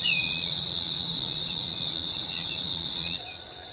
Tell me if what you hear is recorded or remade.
remade